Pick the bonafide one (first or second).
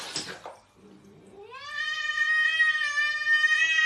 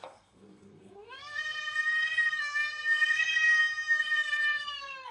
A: first